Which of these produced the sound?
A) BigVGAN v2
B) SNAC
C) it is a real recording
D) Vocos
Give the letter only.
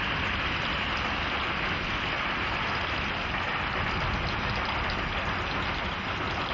C